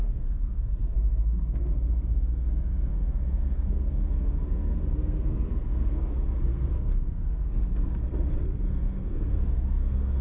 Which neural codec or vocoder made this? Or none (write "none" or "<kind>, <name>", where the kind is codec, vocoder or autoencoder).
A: codec, SNAC